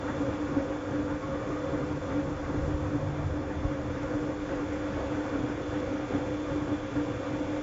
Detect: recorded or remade recorded